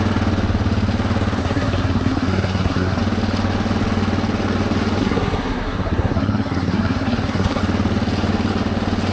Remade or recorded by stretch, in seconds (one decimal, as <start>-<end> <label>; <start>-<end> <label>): 0.0-1.4 recorded; 1.4-3.0 remade; 3.0-5.0 recorded; 5.0-7.6 remade; 7.6-9.1 recorded